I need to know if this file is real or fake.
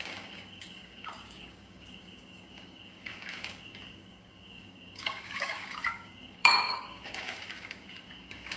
fake